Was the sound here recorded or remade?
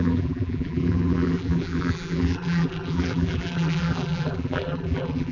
remade